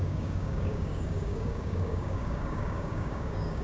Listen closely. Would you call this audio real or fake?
fake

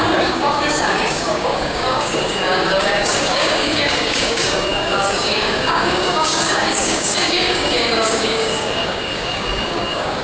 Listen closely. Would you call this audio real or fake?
fake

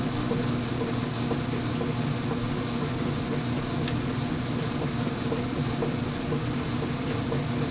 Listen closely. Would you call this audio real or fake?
real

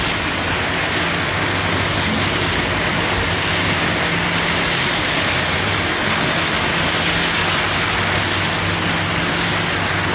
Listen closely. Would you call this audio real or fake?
real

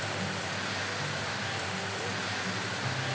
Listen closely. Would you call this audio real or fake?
real